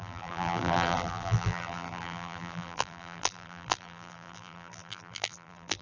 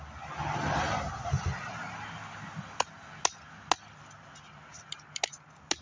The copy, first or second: first